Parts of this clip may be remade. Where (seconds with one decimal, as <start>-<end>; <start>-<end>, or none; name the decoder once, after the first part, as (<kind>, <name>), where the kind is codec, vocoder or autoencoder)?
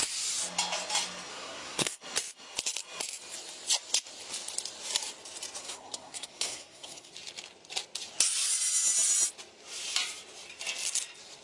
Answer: 1.3-2.0 (codec, SNAC); 5.6-7.1